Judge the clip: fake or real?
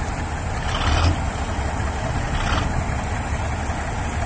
real